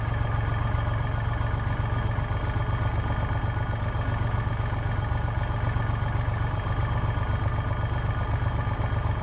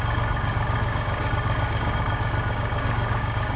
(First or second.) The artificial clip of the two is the second